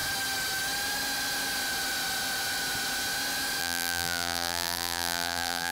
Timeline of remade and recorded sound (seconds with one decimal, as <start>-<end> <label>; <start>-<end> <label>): 0.0-3.6 recorded; 3.6-5.7 remade